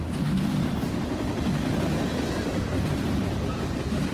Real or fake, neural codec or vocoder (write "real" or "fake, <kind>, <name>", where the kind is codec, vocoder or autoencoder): real